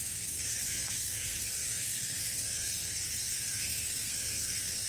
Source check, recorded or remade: remade